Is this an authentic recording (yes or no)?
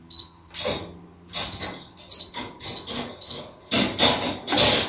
yes